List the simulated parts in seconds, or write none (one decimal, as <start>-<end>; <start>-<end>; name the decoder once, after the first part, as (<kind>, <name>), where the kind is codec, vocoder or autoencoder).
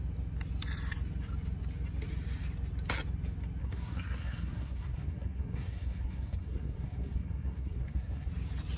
3.6-8.3 (codec, SNAC)